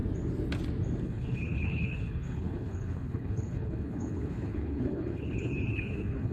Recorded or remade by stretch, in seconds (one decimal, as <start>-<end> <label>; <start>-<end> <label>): 0.0-1.0 recorded; 1.0-6.3 remade